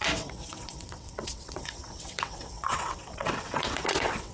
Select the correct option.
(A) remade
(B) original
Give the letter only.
A